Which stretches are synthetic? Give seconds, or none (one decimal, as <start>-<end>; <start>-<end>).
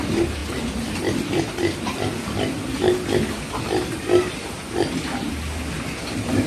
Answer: none